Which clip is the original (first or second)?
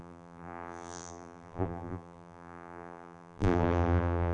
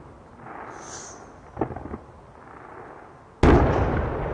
second